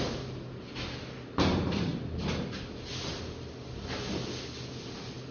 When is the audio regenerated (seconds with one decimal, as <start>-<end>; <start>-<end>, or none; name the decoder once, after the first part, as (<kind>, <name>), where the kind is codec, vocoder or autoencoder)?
none